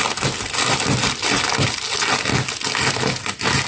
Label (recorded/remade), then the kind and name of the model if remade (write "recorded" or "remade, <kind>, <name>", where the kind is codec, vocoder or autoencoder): recorded